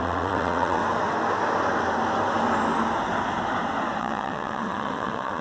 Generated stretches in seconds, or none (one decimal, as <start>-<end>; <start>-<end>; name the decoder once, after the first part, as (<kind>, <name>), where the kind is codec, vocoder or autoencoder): 0.0-0.8 (vocoder, WaveNeXt); 4.0-5.4